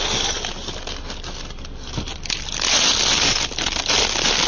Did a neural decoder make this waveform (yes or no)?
no